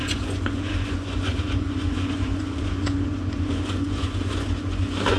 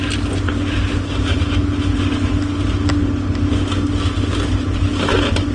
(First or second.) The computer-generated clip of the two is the first